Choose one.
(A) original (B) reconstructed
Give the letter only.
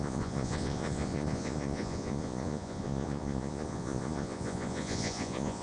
B